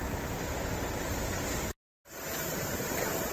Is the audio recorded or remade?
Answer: recorded